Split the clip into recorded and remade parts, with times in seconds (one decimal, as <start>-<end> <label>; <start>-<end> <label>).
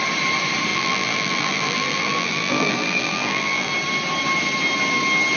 0.0-0.7 recorded; 0.7-3.7 remade; 3.7-5.4 recorded